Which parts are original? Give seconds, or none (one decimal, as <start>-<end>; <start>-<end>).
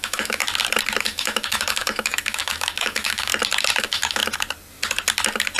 0.4-1.0; 3.3-3.8; 4.2-5.6